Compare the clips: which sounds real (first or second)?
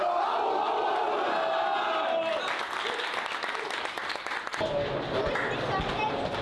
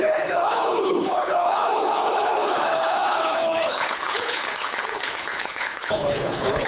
first